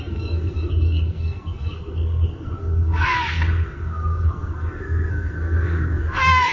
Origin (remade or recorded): remade